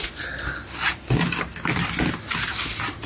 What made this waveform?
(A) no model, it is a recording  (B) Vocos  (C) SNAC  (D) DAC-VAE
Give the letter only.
A